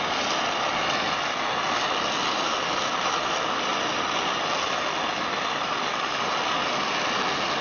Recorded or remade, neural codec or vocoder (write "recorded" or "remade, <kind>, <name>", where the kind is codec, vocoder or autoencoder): recorded